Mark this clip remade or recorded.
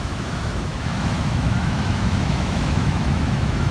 remade